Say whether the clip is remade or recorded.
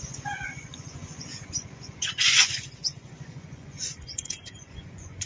remade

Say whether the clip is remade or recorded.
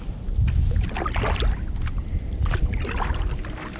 recorded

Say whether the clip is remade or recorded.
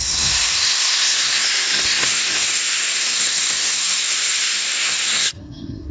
remade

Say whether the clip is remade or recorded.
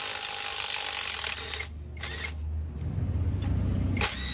recorded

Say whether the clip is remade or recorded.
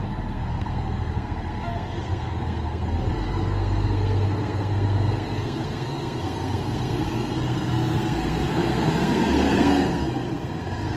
remade